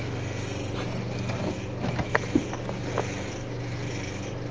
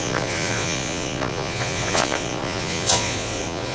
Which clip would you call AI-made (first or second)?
second